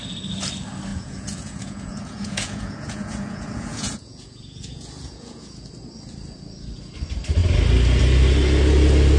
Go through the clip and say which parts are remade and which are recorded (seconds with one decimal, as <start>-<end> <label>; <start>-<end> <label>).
0.0-0.9 recorded; 0.9-5.7 remade; 5.7-9.2 recorded